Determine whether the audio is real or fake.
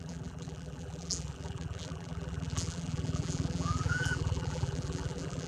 fake